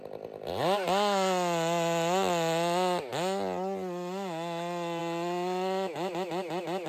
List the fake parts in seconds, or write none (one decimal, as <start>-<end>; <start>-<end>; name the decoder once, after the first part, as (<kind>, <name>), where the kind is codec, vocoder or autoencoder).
none